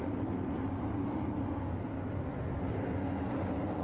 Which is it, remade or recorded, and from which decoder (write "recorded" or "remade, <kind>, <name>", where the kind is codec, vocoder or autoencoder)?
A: recorded